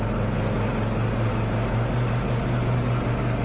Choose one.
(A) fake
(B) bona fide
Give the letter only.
B